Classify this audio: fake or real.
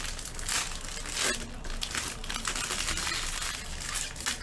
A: real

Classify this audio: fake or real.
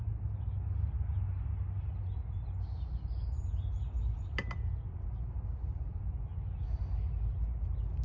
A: real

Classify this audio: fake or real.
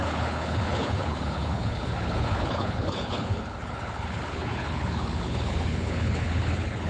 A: fake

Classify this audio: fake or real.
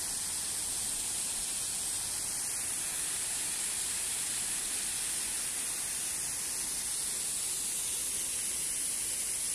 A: real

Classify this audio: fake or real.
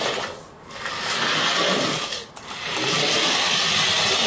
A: real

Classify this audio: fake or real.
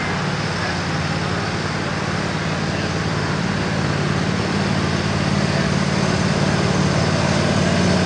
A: real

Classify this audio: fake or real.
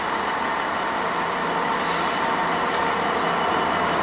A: real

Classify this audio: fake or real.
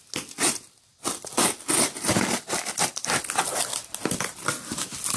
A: real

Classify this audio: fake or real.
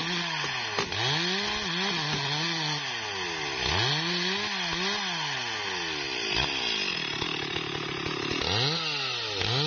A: real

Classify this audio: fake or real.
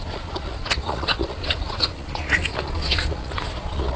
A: fake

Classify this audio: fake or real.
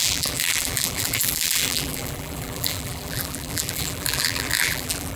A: fake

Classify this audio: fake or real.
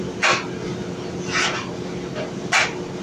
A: real